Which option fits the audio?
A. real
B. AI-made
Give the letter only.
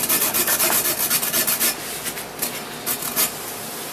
A